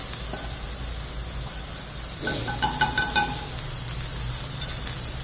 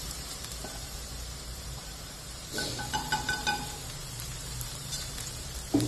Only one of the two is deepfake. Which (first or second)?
second